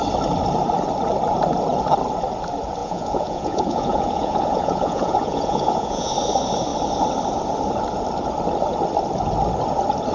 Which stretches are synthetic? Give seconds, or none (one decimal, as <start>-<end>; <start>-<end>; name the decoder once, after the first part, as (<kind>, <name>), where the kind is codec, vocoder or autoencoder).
2.8-6.1 (vocoder, Vocos)